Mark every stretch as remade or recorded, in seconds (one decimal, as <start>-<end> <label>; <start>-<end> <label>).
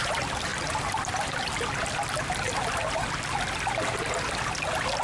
0.0-5.0 recorded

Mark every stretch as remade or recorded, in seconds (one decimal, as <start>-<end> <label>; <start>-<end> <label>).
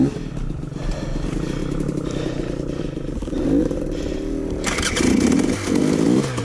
0.0-1.6 recorded; 1.6-2.8 remade; 2.8-3.6 recorded; 3.6-5.5 remade; 5.5-6.4 recorded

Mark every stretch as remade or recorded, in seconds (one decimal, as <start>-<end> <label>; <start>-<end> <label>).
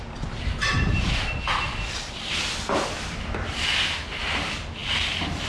0.0-0.7 recorded; 0.7-1.2 remade; 1.2-5.5 recorded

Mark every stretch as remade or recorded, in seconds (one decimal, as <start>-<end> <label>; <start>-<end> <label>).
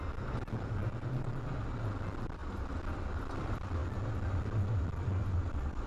0.0-5.9 recorded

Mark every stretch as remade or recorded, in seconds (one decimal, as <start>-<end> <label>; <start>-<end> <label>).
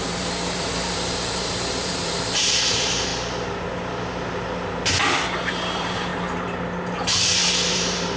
0.0-3.1 remade; 3.1-5.5 recorded; 5.5-6.1 remade; 6.1-7.7 recorded; 7.7-8.2 remade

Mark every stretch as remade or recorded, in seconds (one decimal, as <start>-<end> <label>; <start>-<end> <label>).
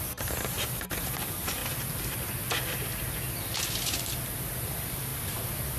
0.0-1.6 remade; 1.6-4.6 recorded; 4.6-5.1 remade; 5.1-5.8 recorded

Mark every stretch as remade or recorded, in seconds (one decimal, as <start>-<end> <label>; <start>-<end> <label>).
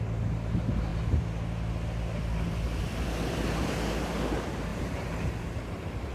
0.0-4.7 recorded; 4.7-5.3 remade; 5.3-6.1 recorded